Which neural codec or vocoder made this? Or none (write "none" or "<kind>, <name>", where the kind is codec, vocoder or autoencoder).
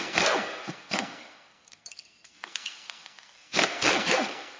codec, SNAC